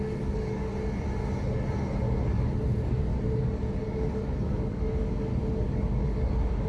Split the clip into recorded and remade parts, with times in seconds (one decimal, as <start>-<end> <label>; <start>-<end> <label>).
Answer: 0.0-0.7 remade; 0.7-3.4 recorded; 3.4-6.7 remade